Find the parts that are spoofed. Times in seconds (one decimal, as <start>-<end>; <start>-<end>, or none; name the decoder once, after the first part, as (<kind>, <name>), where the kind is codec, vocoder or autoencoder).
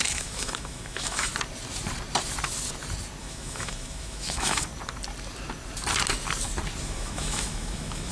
0.0-1.3 (autoencoder, DAC-VAE); 3.2-4.7; 6.8-8.1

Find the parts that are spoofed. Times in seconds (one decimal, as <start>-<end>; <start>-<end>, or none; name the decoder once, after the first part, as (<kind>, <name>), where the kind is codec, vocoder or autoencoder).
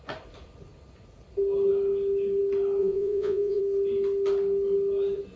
2.8-3.6 (vocoder, Vocos)